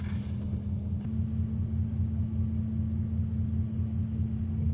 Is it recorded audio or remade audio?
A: recorded